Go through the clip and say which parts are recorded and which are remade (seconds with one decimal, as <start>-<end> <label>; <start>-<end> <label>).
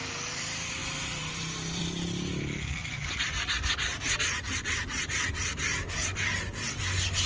0.0-0.8 recorded; 0.8-1.8 remade; 1.8-2.8 recorded; 2.8-4.2 remade; 4.2-6.0 recorded; 6.0-6.8 remade; 6.8-7.3 recorded